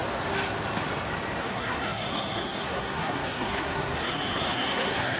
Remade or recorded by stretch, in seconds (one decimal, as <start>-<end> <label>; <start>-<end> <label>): 0.0-1.4 recorded; 1.4-5.2 remade